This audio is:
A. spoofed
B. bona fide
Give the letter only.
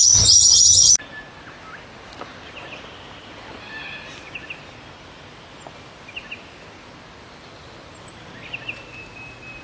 B